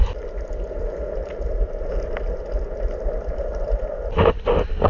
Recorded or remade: recorded